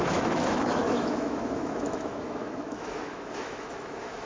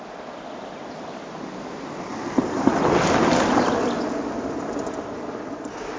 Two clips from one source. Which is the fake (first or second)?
first